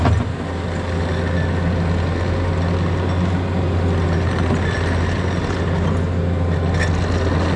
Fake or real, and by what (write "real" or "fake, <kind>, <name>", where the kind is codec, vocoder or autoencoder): real